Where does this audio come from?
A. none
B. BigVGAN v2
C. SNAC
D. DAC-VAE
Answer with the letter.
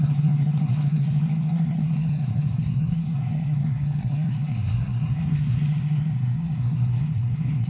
C